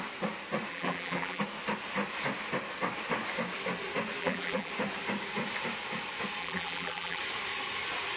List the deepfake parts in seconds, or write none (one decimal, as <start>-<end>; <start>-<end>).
0.7-1.4; 4.2-4.7; 6.4-7.2